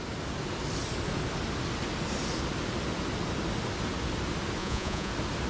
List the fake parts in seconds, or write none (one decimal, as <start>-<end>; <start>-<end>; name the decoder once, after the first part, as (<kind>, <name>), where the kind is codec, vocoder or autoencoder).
4.6-5.1 (vocoder, Vocos)